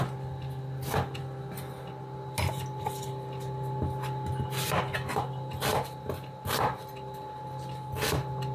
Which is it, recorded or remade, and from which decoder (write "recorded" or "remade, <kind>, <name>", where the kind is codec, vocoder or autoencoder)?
recorded